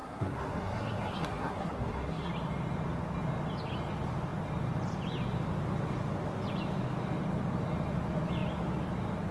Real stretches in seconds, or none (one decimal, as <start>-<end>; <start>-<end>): 2.3-9.3